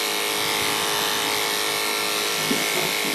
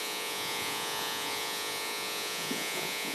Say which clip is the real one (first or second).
first